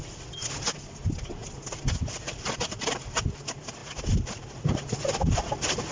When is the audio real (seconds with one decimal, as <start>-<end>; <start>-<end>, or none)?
0.0-5.9